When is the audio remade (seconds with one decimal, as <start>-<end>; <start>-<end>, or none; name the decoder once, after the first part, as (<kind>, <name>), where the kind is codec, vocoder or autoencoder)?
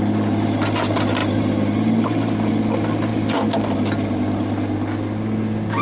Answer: none